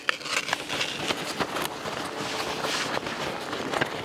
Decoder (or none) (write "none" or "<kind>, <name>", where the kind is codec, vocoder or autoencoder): none